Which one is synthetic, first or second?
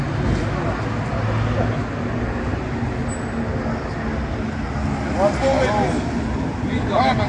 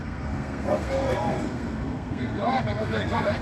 second